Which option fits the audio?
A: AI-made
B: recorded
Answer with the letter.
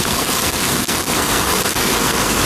A